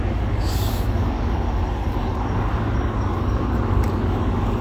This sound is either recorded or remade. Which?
remade